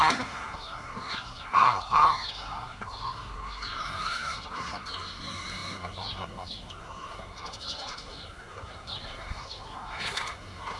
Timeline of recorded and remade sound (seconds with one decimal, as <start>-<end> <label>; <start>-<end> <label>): 0.0-10.8 remade